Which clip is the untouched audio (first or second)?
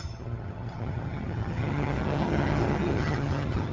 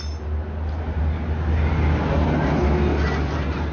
second